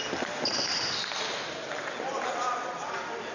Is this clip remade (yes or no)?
no